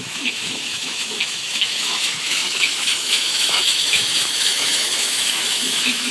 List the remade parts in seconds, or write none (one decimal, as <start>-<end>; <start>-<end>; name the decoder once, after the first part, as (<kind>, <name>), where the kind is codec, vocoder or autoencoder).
0.0-6.1 (autoencoder, DAC-VAE)